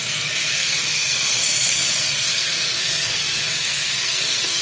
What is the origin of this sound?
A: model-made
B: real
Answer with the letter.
A